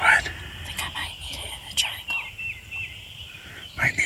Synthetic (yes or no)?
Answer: no